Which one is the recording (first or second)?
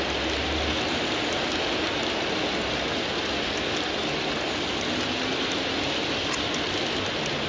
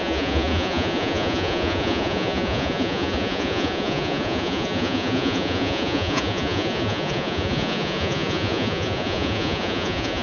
first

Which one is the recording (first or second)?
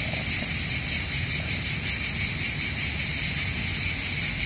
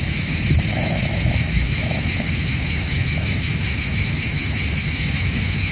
first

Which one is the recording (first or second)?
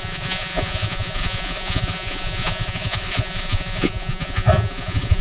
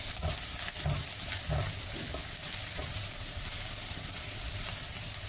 second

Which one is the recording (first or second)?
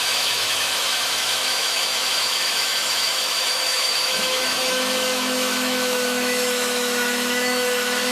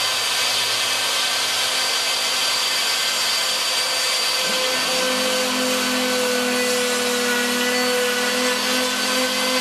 second